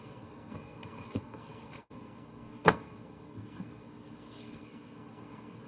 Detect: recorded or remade remade